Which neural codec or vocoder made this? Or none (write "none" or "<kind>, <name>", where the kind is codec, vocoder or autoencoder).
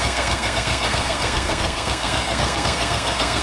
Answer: codec, SNAC